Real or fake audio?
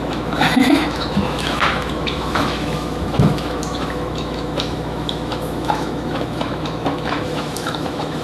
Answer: fake